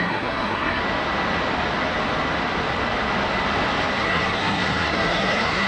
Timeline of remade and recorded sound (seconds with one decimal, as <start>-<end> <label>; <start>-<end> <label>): 0.0-0.8 remade; 0.8-4.0 recorded; 4.0-5.7 remade